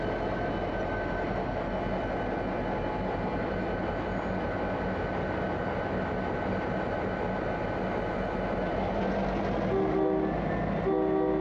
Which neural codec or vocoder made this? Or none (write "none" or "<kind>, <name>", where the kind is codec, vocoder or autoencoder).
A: none